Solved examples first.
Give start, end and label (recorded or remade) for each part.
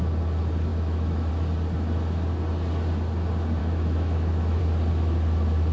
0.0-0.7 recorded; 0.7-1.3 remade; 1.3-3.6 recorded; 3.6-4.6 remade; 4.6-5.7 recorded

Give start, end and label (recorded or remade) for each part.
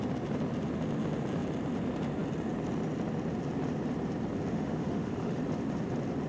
0.0-4.5 recorded; 4.5-5.4 remade; 5.4-6.3 recorded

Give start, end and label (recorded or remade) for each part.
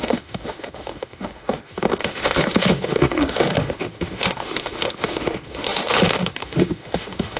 0.0-7.4 remade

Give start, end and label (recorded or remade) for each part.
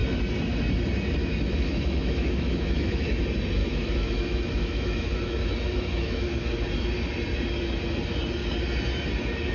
0.0-1.2 recorded; 1.2-3.2 remade; 3.2-3.6 recorded; 3.6-6.3 remade; 6.3-9.5 recorded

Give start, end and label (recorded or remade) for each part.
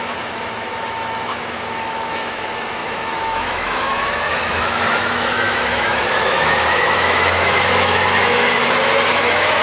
0.0-8.6 remade; 8.6-9.1 recorded; 9.1-9.6 remade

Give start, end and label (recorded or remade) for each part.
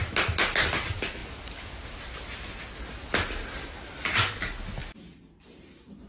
0.0-6.1 recorded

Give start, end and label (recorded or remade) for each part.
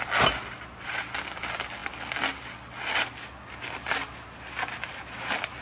0.0-5.6 recorded